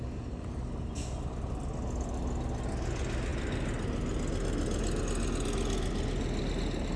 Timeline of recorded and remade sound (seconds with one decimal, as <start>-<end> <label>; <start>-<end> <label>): 0.0-7.0 recorded